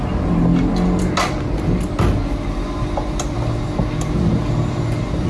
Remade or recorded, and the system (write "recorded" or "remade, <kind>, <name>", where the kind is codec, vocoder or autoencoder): recorded